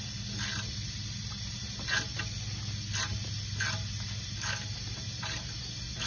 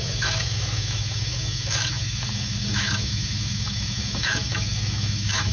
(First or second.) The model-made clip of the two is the second